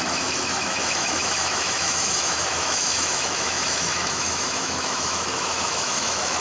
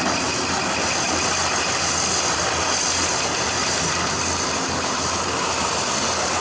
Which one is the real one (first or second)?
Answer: second